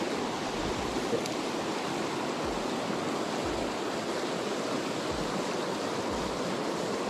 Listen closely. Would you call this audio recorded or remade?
recorded